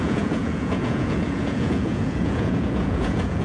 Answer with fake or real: fake